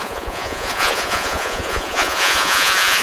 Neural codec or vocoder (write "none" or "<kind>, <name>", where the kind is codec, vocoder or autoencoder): vocoder, Vocos